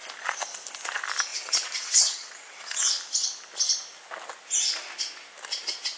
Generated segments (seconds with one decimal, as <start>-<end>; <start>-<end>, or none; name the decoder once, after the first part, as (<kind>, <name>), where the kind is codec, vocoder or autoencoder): 1.3-2.9 (vocoder, WaveNeXt)